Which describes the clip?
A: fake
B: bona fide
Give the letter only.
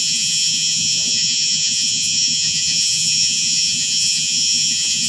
A